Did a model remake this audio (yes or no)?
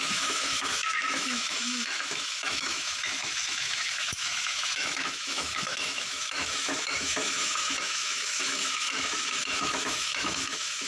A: yes